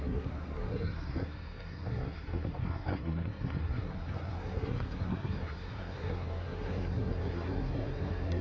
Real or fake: fake